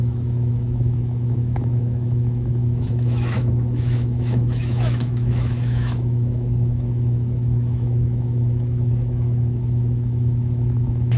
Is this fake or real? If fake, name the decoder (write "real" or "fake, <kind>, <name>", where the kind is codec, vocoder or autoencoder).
fake, autoencoder, DAC-VAE